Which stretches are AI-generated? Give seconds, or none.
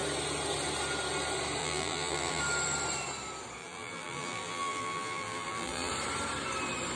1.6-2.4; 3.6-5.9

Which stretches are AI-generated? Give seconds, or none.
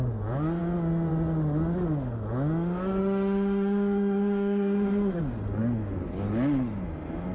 3.0-5.2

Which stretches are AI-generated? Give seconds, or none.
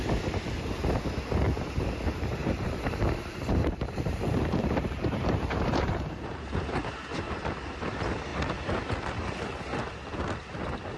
2.4-6.9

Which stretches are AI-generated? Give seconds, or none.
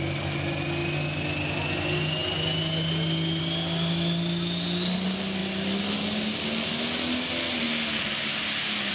none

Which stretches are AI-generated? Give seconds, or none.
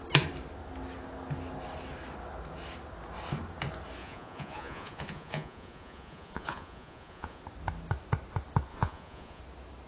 4.0-7.4; 8.7-9.4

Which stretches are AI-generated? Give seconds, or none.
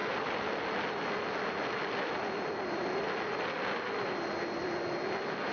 none